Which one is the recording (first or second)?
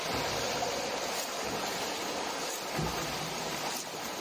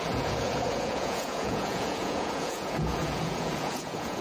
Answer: first